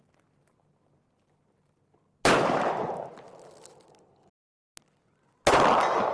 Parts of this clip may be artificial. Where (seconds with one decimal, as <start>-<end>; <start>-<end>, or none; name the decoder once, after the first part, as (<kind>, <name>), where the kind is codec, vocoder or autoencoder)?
none